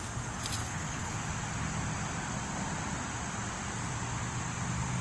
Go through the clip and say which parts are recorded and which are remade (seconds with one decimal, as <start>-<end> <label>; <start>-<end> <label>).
0.0-0.6 recorded; 0.6-1.1 remade; 1.1-5.0 recorded